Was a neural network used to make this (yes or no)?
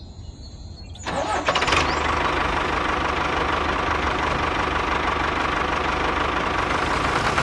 no